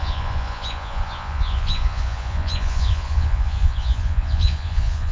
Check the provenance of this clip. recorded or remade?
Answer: remade